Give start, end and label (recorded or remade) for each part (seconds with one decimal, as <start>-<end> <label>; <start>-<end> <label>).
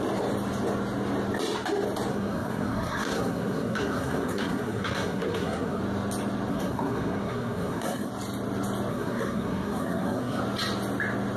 0.0-2.1 recorded; 2.1-5.8 remade; 5.8-6.5 recorded; 6.5-8.1 remade; 8.1-8.9 recorded; 8.9-10.4 remade; 10.4-11.4 recorded